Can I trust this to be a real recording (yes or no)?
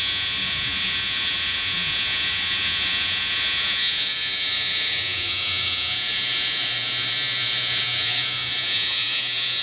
no